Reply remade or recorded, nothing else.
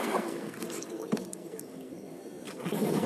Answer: remade